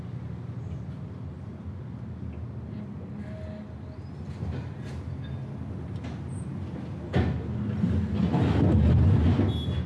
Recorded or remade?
recorded